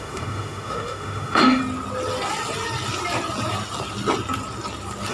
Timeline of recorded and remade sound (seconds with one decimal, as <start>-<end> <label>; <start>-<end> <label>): 0.0-1.6 remade; 1.6-5.1 recorded